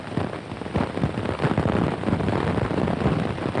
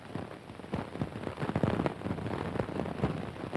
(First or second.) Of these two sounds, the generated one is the first